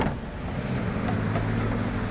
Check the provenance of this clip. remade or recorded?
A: recorded